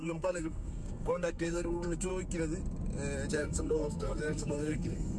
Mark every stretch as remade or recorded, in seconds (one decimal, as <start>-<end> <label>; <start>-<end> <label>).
0.0-2.1 remade; 2.1-3.3 recorded; 3.3-5.2 remade